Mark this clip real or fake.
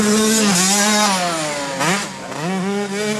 real